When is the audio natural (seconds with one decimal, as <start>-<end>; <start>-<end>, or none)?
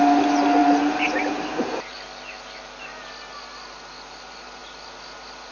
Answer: 0.0-5.5